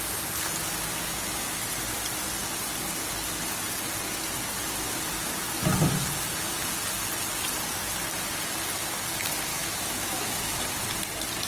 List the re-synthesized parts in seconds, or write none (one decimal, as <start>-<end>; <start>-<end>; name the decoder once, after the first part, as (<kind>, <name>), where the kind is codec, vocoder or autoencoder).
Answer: 9.5-10.6 (autoencoder, DAC-VAE)